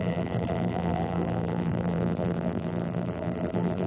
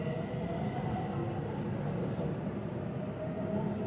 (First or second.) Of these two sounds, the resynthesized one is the first